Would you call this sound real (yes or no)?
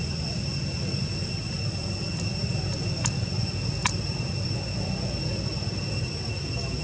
yes